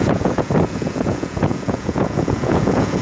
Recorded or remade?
remade